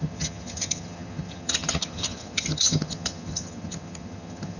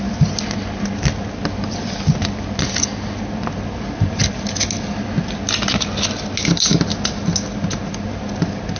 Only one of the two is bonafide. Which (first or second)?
second